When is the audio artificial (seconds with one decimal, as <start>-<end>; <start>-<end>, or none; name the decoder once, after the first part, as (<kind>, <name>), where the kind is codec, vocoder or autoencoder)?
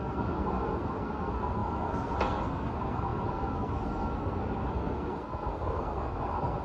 0.0-6.6 (codec, SNAC)